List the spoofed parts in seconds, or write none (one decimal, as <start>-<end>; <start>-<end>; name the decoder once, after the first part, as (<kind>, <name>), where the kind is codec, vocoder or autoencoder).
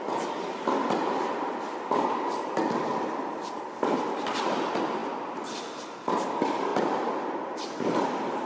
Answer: none